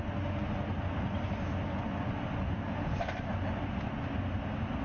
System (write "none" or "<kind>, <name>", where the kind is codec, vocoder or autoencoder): none